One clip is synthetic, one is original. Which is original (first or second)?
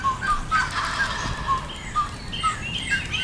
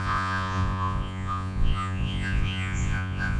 first